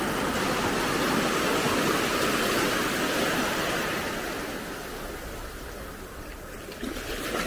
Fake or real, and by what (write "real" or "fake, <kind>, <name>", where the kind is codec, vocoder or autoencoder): real